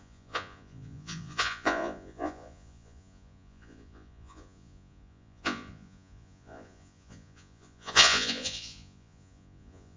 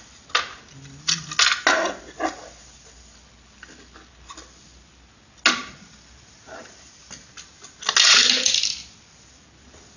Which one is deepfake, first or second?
first